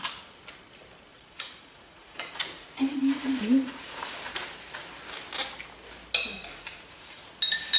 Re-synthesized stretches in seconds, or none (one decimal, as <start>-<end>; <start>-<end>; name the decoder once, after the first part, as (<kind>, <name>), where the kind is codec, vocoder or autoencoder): 1.1-4.2 (vocoder, Vocos); 6.3-7.2